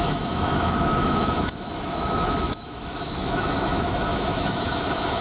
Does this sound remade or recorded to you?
remade